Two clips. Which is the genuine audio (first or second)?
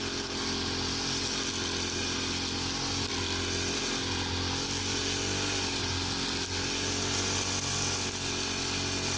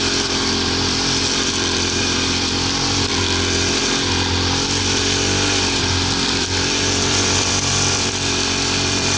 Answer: first